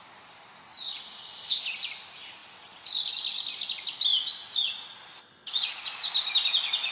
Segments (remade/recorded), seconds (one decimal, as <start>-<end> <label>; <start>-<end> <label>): 0.0-0.7 recorded; 0.7-1.3 remade; 1.3-5.4 recorded; 5.4-6.1 remade; 6.1-6.9 recorded